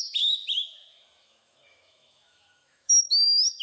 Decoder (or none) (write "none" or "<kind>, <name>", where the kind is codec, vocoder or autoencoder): autoencoder, DAC-VAE